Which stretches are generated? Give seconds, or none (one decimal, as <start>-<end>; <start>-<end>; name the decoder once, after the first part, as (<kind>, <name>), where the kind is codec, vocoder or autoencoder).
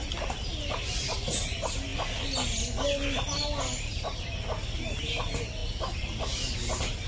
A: none